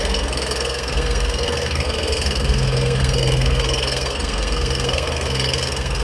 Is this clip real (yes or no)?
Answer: no